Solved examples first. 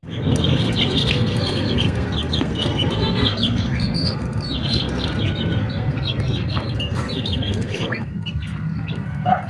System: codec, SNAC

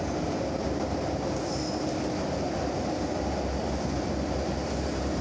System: none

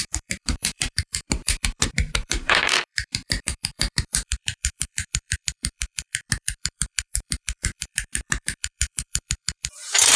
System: vocoder, BigVGAN v2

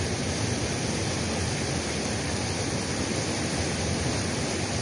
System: none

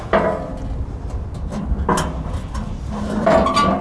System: none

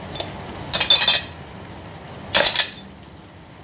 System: none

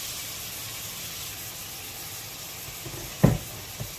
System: none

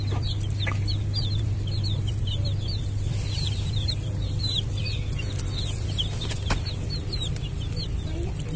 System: vocoder, BigVGAN v2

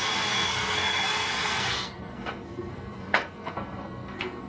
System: codec, SNAC